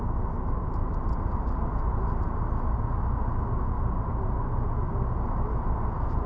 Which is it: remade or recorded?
recorded